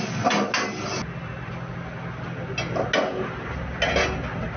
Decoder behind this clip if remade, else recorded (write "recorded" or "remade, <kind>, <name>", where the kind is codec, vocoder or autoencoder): recorded